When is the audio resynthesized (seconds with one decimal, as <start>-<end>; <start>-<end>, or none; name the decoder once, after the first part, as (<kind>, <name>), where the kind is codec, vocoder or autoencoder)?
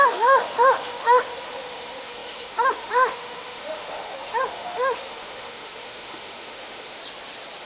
0.0-7.0 (autoencoder, DAC-VAE)